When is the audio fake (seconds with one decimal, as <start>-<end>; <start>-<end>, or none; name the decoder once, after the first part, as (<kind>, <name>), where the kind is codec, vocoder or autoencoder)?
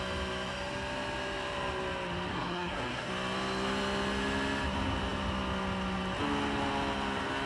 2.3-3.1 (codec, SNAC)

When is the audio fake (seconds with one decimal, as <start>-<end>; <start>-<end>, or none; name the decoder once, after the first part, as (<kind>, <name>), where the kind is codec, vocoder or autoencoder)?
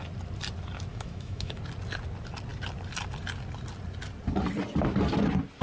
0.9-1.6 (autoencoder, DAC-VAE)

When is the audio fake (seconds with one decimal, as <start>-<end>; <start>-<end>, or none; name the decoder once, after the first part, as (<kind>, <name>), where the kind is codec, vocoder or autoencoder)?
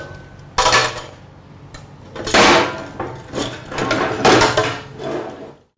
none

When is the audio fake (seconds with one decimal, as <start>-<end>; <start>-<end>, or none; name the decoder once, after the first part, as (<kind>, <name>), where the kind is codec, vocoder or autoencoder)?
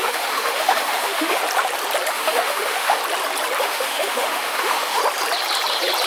0.0-1.4 (autoencoder, DAC-VAE); 2.1-3.0; 3.6-5.0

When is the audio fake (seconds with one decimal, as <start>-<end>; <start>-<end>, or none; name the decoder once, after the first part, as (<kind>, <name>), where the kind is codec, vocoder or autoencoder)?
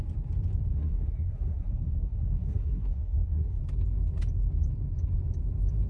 0.7-3.6 (codec, SNAC)